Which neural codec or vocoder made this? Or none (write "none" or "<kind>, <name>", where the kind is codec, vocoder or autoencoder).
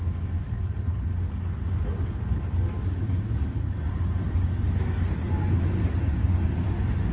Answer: none